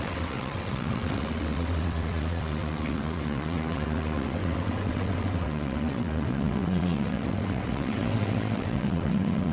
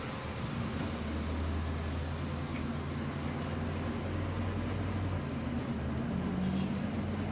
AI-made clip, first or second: first